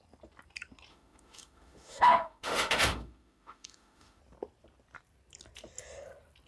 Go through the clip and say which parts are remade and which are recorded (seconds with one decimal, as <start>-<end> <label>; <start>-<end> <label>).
0.0-0.9 recorded; 0.9-4.2 remade; 4.2-6.5 recorded